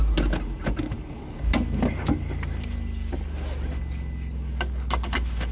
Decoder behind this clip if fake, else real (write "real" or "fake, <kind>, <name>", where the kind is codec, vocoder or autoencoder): real